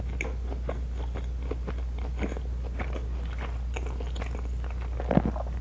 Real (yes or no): yes